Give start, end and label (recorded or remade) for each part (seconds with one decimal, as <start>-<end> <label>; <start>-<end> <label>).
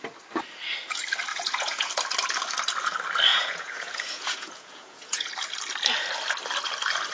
0.0-1.3 recorded; 1.3-1.9 remade; 1.9-3.3 recorded; 3.3-5.3 remade; 5.3-7.1 recorded